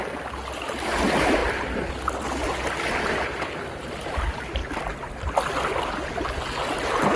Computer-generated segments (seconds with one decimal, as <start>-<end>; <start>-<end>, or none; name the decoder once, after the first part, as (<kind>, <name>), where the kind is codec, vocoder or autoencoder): none

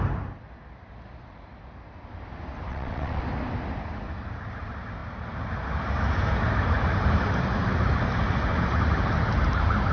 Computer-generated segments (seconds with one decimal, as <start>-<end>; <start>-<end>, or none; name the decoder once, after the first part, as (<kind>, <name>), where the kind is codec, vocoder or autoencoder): 2.7-3.2 (vocoder, WaveNeXt)

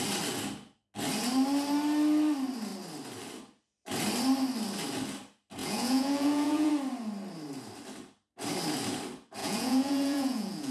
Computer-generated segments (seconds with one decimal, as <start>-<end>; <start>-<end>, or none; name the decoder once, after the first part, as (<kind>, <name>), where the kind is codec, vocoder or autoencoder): 5.6-6.7 (vocoder, Vocos); 9.4-10.7

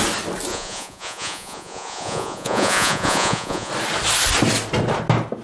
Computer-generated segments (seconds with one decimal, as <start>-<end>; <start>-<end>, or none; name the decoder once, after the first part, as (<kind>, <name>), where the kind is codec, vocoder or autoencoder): 0.5-3.7 (vocoder, Vocos)

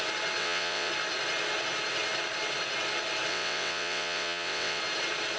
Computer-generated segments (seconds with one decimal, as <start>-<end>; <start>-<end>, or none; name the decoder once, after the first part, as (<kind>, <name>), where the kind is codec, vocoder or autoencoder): 0.4-0.9 (vocoder, WaveNeXt); 3.3-4.8